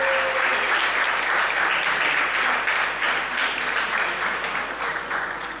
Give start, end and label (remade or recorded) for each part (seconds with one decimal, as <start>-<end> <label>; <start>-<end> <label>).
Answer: 0.0-4.9 recorded; 4.9-5.6 remade